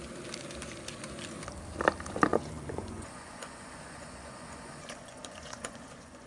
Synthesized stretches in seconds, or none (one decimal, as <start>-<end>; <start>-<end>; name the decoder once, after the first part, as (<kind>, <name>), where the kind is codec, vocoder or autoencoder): 2.3-6.3 (vocoder, Vocos)